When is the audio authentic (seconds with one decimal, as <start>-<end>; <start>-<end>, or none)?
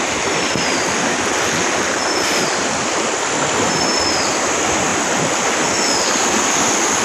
0.0-7.0